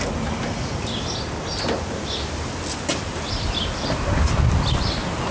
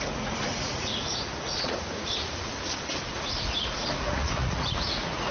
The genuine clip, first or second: first